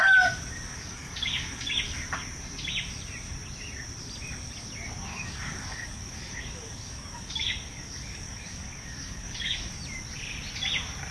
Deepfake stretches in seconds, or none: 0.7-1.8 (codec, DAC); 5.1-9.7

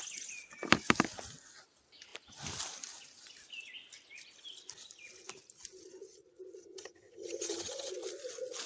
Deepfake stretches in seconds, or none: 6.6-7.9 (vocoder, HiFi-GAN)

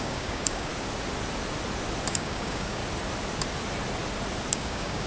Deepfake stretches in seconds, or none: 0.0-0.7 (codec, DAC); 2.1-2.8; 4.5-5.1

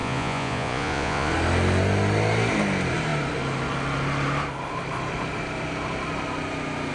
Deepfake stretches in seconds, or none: 0.0-1.3 (vocoder, Vocos)

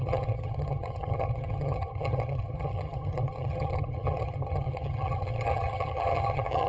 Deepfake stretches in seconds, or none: 0.0-6.7 (vocoder, HiFi-GAN)

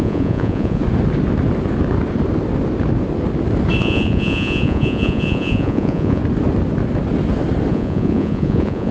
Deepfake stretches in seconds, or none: 0.0-0.8 (vocoder, Vocos); 3.8-6.2; 7.7-8.9